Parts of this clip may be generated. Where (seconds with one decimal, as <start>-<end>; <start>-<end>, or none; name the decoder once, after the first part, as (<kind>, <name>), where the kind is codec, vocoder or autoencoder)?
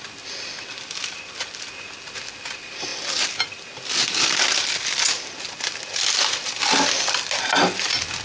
none